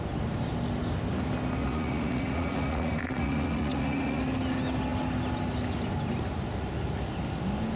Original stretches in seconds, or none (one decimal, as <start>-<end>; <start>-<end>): 0.0-1.6; 4.2-7.8